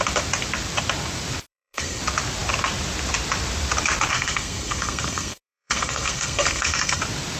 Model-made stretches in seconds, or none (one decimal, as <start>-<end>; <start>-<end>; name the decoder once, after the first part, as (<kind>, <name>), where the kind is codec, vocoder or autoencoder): 1.5-2.0 (codec, SNAC); 4.1-7.0